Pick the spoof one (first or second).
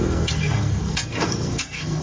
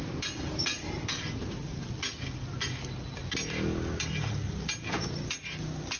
first